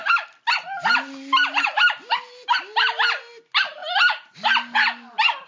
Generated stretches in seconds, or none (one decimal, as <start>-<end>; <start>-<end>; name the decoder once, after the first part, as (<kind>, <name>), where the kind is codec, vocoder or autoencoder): none